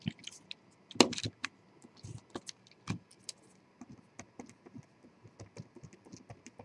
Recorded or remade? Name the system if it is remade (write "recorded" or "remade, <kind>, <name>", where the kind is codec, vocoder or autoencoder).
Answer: recorded